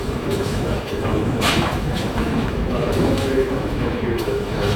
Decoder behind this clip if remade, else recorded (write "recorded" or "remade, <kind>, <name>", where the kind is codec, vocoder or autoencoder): remade, autoencoder, DAC-VAE